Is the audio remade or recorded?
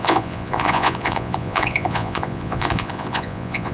remade